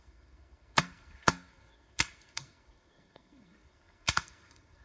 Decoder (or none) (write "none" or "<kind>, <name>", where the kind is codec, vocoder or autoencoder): codec, SNAC